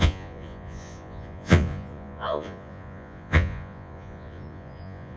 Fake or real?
fake